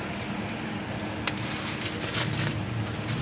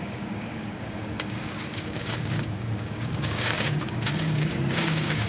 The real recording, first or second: first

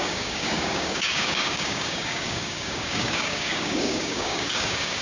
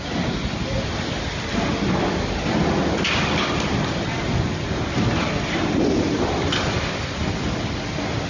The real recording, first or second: second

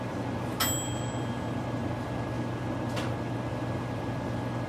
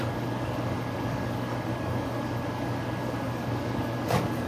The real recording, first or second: first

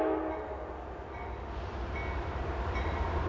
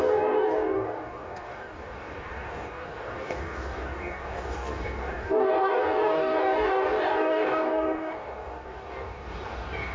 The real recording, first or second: first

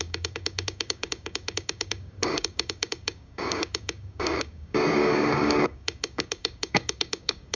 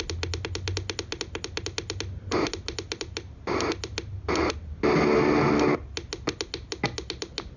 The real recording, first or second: second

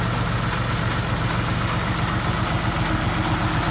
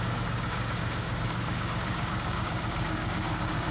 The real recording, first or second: first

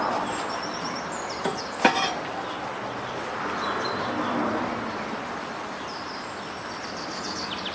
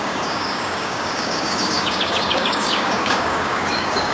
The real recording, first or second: first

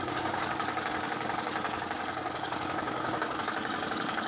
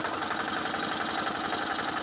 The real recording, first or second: second